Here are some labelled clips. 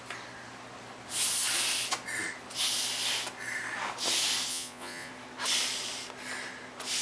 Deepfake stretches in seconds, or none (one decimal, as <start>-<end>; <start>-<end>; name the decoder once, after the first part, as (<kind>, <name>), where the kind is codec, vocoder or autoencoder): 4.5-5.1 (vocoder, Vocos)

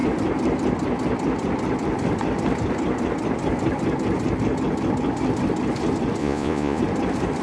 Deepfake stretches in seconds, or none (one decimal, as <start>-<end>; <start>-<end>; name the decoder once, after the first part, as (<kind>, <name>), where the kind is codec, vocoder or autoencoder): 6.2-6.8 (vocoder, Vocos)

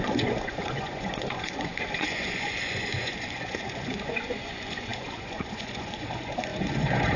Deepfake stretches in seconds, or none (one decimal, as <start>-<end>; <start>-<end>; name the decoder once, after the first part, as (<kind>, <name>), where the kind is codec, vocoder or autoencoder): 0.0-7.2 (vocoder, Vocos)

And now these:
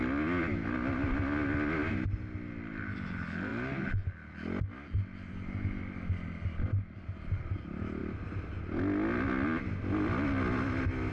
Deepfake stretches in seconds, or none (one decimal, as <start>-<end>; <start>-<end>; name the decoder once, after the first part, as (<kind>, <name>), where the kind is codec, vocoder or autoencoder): none